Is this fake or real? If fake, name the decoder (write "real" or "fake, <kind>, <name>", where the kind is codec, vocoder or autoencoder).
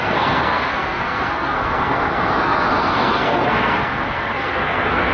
fake, codec, SNAC